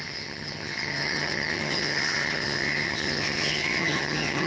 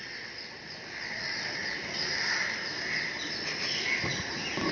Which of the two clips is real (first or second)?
second